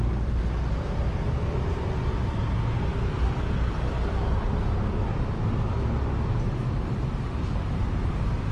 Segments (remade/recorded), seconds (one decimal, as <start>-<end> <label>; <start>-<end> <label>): 0.0-8.5 recorded